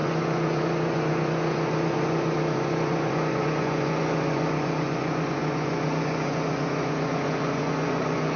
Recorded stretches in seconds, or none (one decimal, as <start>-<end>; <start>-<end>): none